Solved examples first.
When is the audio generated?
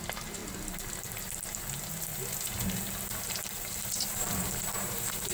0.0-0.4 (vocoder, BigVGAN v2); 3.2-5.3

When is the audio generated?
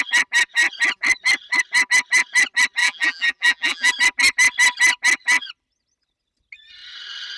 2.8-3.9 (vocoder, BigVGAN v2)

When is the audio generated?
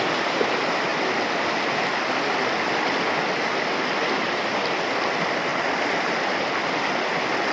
0.9-1.4 (vocoder, BigVGAN v2)